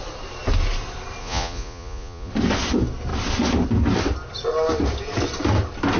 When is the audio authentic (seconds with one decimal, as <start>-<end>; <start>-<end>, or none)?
0.0-1.2; 2.3-6.0